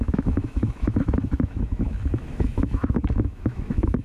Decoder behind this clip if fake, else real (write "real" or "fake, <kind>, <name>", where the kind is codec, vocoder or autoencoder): fake, autoencoder, DAC-VAE